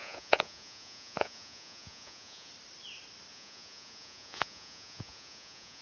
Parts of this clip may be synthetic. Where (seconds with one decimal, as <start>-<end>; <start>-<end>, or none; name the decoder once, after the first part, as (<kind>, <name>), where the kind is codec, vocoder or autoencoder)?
0.0-2.5 (vocoder, Vocos); 3.3-5.8